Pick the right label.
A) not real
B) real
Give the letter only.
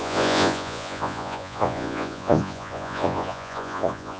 A